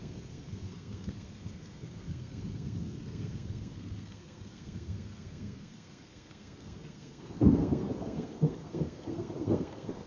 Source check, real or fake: fake